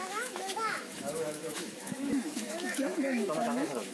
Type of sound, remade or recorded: remade